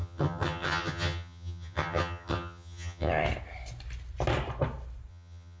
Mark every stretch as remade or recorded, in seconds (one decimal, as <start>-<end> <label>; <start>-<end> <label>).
0.0-3.1 remade; 3.1-5.1 recorded; 5.1-5.6 remade